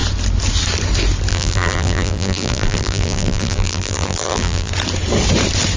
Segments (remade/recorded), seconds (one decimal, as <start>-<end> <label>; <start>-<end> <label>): 0.0-1.3 recorded; 1.3-4.7 remade; 4.7-5.8 recorded